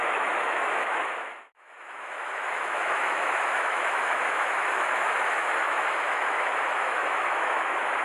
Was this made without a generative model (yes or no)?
no